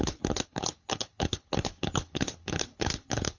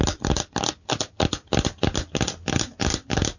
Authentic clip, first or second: second